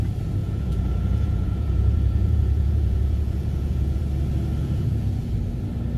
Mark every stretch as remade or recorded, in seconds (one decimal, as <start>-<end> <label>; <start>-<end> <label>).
0.0-0.4 recorded; 0.4-4.0 remade; 4.0-4.6 recorded; 4.6-5.3 remade; 5.3-6.0 recorded